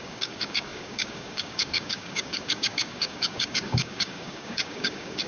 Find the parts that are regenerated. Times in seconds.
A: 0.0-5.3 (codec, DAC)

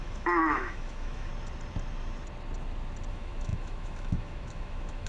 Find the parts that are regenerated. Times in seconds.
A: 0.0-1.3 (autoencoder, DAC-VAE); 3.1-5.1

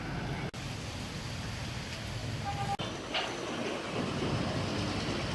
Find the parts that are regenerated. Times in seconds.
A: none

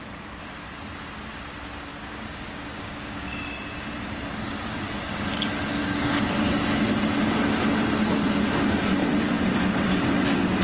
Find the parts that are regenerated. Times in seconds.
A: 1.9-3.4 (codec, DAC)

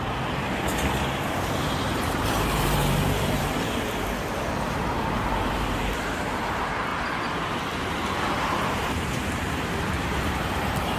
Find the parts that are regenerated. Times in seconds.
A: 0.0-0.7 (vocoder, BigVGAN v2); 1.3-6.9; 8.7-11.0

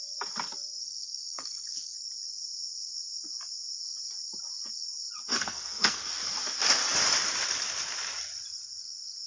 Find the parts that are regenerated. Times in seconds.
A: 0.6-2.1 (codec, SNAC); 5.3-6.1

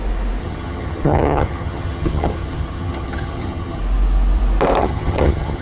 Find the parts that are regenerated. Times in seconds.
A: 0.4-3.8 (vocoder, HiFi-GAN); 4.8-5.6